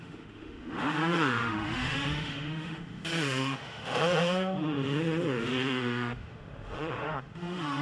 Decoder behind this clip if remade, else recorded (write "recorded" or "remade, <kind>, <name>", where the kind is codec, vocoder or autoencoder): remade, autoencoder, DAC-VAE